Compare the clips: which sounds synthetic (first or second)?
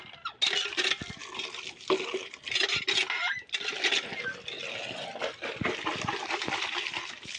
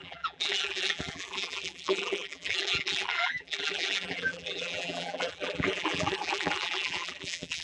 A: second